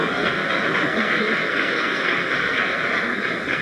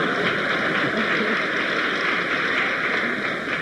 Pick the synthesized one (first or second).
first